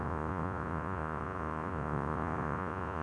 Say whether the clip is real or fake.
fake